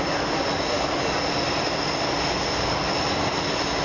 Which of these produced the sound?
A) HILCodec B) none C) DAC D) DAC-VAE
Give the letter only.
B